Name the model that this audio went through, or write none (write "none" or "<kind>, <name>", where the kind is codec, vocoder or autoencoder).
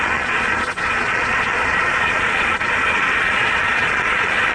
vocoder, Vocos